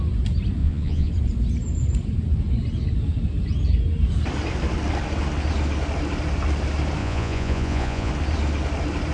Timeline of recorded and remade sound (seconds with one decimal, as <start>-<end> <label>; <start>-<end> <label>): 0.0-0.6 recorded; 0.6-1.1 remade; 1.1-7.0 recorded; 7.0-8.1 remade; 8.1-9.1 recorded